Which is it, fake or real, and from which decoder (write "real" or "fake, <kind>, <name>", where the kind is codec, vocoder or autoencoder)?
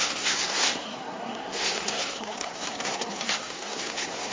fake, codec, SNAC